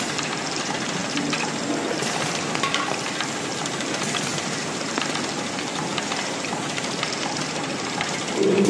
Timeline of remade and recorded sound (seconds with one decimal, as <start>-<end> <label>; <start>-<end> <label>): 0.0-8.7 recorded